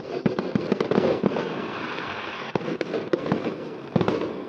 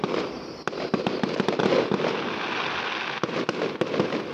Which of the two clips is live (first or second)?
second